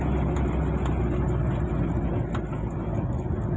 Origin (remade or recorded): recorded